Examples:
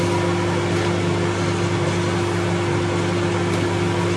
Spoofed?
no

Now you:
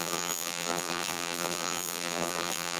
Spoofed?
yes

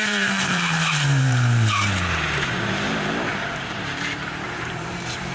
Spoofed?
yes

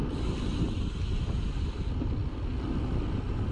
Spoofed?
no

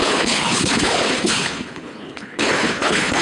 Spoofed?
yes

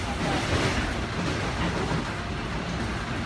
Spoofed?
no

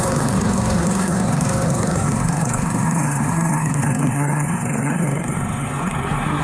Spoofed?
yes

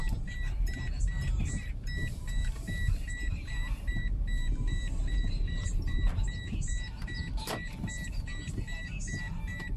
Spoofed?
yes